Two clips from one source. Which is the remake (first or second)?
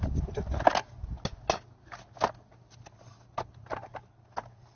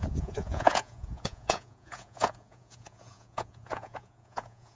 second